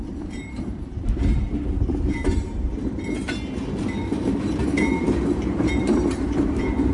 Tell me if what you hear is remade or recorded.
remade